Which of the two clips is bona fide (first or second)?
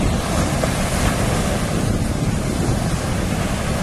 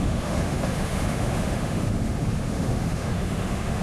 first